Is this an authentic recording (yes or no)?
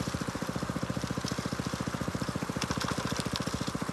yes